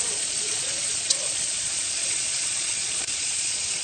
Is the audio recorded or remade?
remade